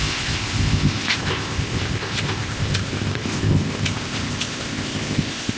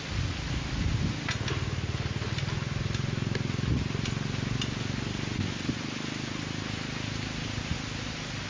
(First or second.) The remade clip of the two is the first